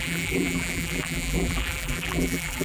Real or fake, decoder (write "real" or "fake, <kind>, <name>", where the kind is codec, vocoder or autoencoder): fake, vocoder, BigVGAN v2